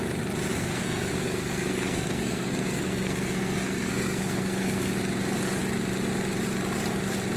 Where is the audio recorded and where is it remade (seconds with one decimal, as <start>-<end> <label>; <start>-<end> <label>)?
0.0-0.5 recorded; 0.5-4.9 remade; 4.9-7.4 recorded